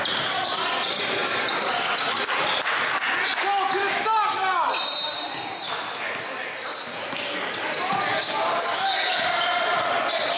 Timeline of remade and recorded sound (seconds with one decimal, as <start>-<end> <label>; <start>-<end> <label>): 0.0-10.4 recorded